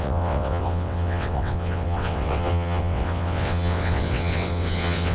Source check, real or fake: fake